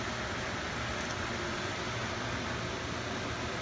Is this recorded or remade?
recorded